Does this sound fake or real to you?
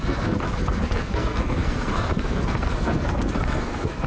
fake